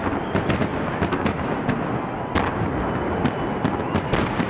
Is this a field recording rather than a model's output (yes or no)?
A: yes